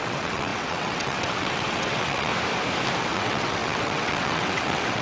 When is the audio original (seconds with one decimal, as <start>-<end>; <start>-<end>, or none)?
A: 2.3-3.0